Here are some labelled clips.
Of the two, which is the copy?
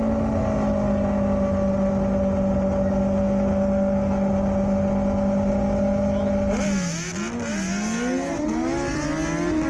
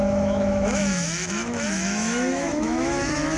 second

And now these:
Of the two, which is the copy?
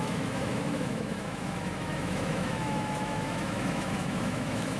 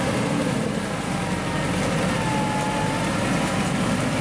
first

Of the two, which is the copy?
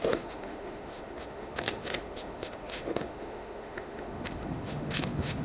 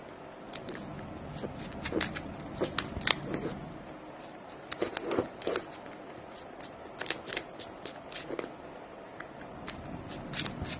first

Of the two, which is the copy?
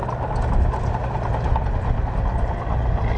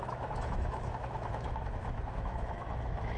second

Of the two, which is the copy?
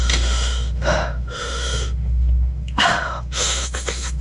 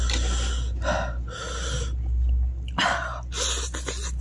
first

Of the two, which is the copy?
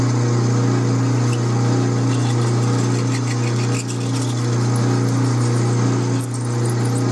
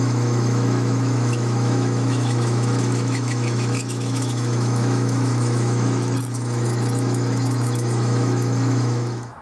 second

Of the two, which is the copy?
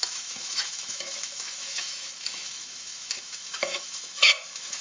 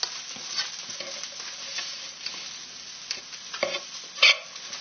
first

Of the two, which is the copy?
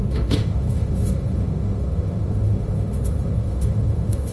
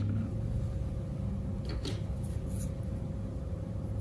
first